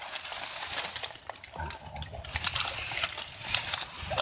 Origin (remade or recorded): recorded